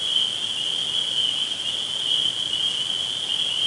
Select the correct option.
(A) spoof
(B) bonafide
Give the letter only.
B